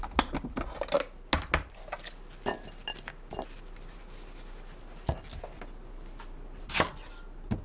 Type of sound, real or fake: real